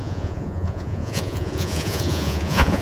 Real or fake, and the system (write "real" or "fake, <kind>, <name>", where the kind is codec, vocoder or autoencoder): fake, vocoder, Vocos